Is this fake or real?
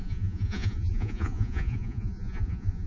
fake